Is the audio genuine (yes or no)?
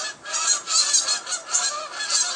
yes